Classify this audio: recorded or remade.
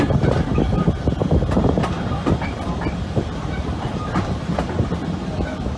remade